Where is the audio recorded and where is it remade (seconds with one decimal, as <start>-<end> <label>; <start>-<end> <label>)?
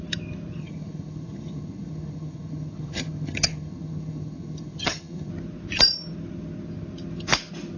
0.0-0.6 recorded; 0.6-5.3 remade; 5.3-7.8 recorded